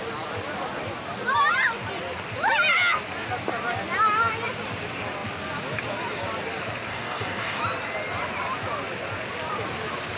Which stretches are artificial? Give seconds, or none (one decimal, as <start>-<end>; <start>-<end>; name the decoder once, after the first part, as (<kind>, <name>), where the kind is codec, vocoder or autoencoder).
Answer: 6.9-7.6 (codec, DAC)

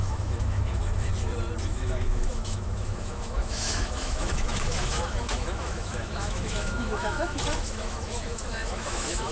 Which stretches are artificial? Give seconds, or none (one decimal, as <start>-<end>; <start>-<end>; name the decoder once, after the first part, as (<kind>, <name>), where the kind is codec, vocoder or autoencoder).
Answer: 0.0-1.1 (autoencoder, DAC-VAE); 1.6-9.3

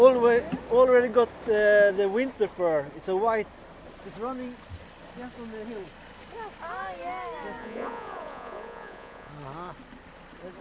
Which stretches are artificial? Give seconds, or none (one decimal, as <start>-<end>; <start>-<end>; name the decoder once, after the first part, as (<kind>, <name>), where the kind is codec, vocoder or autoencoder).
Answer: 7.6-9.3 (vocoder, Vocos)

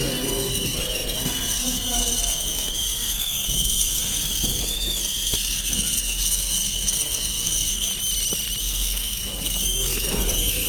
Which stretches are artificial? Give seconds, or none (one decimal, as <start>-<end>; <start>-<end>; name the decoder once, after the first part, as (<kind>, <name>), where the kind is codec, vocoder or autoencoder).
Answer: 0.0-7.9 (codec, SNAC); 8.6-10.7

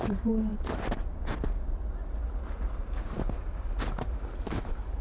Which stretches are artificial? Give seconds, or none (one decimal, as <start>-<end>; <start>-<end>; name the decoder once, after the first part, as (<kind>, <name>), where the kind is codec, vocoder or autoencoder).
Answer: 0.0-0.5 (vocoder, BigVGAN v2); 2.5-5.0

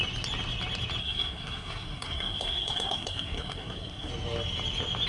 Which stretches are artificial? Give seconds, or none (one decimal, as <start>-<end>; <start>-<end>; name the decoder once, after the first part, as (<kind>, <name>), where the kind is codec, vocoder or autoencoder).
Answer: 1.0-4.1 (codec, SNAC)

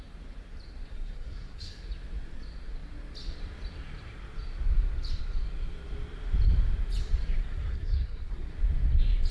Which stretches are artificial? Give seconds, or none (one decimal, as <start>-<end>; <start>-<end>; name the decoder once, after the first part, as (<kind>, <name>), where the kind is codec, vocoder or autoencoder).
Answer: 0.9-1.8 (codec, SNAC); 7.4-8.5

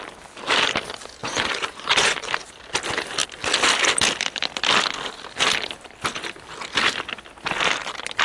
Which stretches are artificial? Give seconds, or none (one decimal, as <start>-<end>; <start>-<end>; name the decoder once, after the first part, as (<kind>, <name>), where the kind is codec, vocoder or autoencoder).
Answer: 1.2-2.2 (vocoder, Vocos)